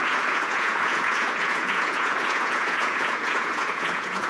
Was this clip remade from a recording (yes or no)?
yes